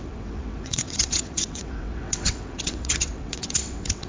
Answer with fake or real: fake